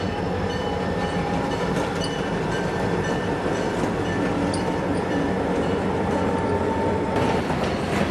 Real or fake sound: fake